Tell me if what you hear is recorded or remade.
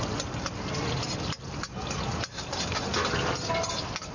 recorded